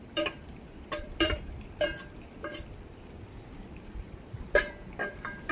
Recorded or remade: remade